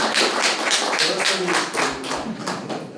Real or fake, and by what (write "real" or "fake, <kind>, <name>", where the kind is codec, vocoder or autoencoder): real